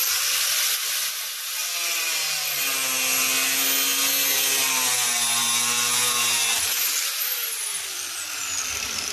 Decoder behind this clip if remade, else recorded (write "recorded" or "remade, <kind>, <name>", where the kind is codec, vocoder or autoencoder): recorded